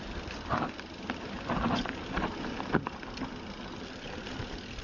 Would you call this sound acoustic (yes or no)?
yes